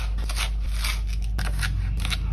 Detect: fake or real real